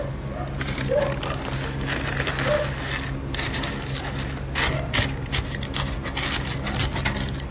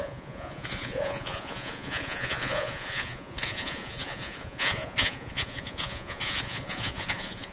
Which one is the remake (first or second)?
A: second